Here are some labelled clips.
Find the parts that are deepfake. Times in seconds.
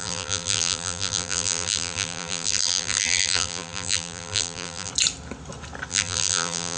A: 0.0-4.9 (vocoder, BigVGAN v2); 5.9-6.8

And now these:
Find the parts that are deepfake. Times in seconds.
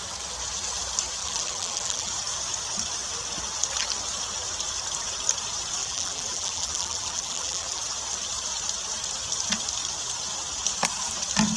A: 1.2-2.1 (vocoder, BigVGAN v2); 5.8-7.8